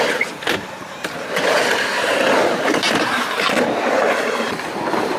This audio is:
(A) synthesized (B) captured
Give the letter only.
A